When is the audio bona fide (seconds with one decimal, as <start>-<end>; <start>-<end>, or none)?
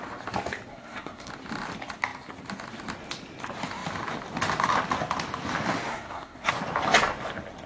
0.0-0.7; 1.3-5.9; 6.5-7.7